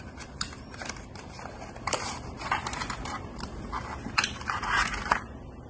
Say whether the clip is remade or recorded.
remade